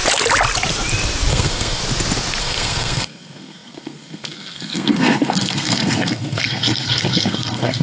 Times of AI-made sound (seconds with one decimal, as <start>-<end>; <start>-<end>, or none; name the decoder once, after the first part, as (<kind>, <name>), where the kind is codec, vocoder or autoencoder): 1.3-1.8 (codec, SNAC); 2.4-7.8